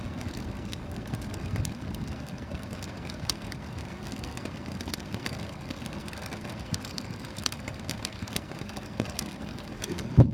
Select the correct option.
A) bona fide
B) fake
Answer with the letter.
B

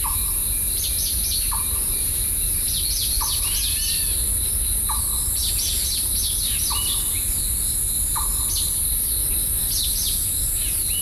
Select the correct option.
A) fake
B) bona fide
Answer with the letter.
B